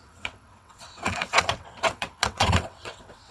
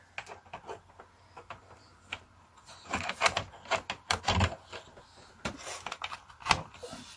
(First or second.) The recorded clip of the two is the second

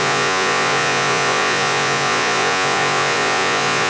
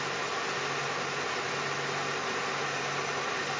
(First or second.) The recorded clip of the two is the second